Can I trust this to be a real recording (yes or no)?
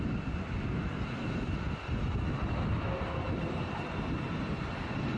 yes